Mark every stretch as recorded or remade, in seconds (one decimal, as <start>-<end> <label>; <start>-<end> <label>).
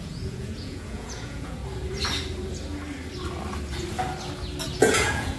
0.0-1.6 remade; 1.6-4.8 recorded; 4.8-5.4 remade